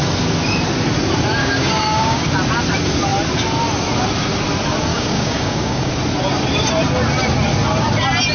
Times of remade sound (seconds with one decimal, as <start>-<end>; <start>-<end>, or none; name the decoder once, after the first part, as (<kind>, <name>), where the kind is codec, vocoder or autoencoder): 1.4-2.3 (codec, DAC); 4.9-5.9